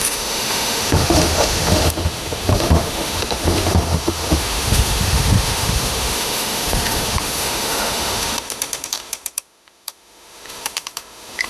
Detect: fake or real fake